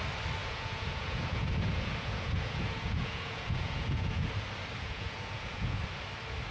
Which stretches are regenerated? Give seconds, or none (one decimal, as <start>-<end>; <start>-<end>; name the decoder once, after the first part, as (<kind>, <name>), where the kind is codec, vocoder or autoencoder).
0.4-4.3 (vocoder, Vocos); 4.8-5.8